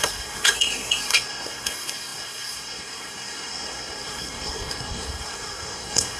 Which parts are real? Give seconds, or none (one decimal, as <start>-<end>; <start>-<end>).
none